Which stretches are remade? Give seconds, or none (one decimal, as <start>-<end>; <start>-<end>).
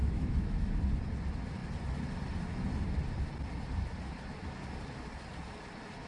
0.0-0.7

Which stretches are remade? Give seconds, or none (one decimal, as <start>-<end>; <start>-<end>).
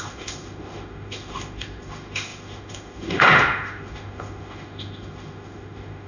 0.0-6.1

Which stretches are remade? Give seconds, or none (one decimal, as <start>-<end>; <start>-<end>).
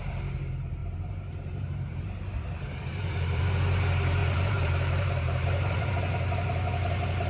0.8-3.4; 4.2-5.9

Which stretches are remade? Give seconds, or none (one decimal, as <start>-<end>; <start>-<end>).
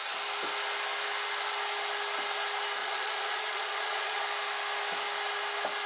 2.8-4.2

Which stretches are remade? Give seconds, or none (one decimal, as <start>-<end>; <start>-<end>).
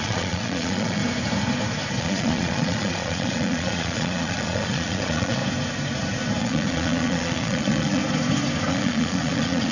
0.0-1.0; 2.0-5.4; 6.4-8.0; 8.7-9.7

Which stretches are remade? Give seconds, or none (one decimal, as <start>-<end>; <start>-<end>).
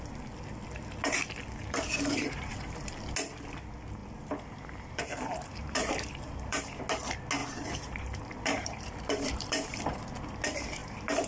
1.6-2.9; 4.0-6.8; 7.4-9.8; 10.8-11.3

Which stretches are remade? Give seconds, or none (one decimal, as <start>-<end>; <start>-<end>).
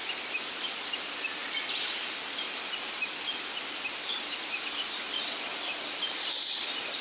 none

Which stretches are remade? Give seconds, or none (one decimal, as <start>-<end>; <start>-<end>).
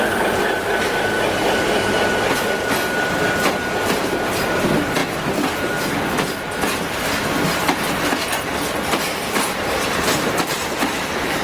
none